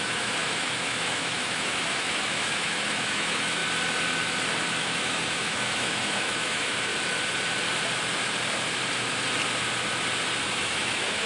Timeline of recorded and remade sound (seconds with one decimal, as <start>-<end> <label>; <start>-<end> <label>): 0.0-3.6 remade; 3.6-4.8 recorded; 4.8-6.9 remade; 6.9-10.4 recorded; 10.4-11.3 remade